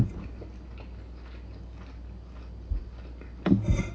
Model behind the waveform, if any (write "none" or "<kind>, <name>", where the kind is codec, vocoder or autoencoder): none